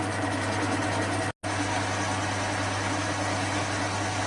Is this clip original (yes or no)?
yes